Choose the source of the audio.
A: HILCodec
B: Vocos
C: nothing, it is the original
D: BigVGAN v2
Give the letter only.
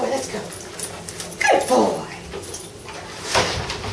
C